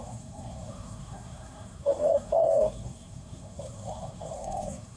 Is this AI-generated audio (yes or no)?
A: yes